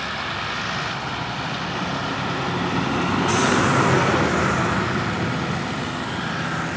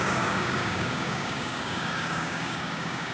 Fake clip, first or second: second